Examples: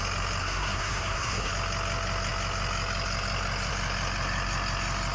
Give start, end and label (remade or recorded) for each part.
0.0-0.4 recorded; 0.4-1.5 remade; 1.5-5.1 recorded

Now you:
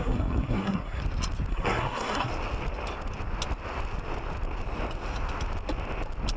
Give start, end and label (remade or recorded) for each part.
0.0-1.0 remade; 1.0-1.5 recorded; 1.5-2.3 remade; 2.3-6.4 recorded

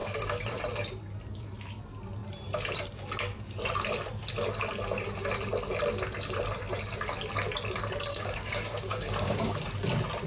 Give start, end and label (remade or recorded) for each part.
0.0-0.6 remade; 0.6-8.1 recorded; 8.1-9.7 remade; 9.7-10.3 recorded

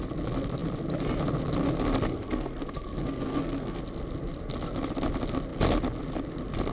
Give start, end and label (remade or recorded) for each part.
0.0-2.1 recorded; 2.1-3.8 remade; 3.8-6.7 recorded

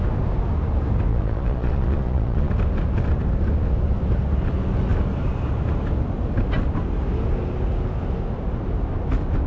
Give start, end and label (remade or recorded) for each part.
0.0-1.1 recorded; 1.1-2.5 remade; 2.5-9.5 recorded

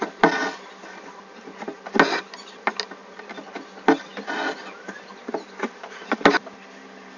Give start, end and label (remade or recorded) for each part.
0.0-7.2 recorded

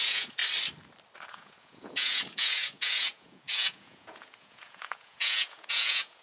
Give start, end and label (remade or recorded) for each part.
0.0-0.4 remade; 0.4-1.3 recorded; 1.3-6.2 remade